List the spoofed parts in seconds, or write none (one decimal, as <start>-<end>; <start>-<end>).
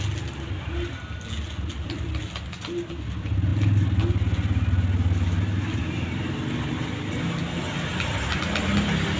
none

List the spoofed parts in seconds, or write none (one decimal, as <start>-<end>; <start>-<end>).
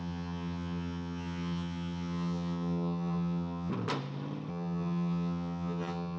0.0-3.7; 4.5-6.2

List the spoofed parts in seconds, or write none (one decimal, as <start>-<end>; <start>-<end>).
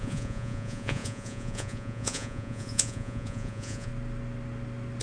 0.0-3.9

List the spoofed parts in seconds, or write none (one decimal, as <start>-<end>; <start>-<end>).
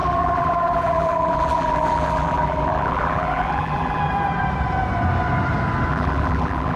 0.0-4.0; 5.9-6.8